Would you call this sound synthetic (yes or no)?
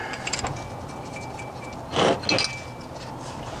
no